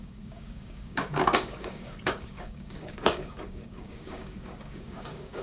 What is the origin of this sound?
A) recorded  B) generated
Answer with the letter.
B